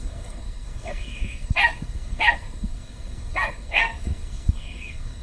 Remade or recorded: remade